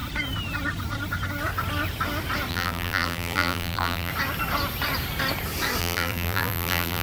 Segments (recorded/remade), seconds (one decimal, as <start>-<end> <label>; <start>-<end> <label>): 0.0-2.5 recorded; 2.5-4.1 remade; 4.1-5.8 recorded; 5.8-7.0 remade